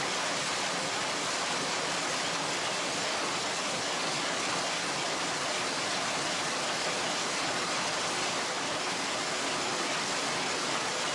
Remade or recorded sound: recorded